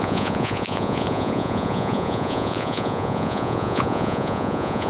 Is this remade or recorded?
remade